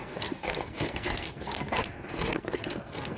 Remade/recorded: remade